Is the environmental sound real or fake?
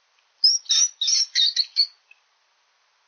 real